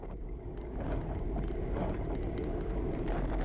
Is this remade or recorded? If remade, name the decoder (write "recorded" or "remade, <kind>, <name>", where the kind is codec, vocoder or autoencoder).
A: recorded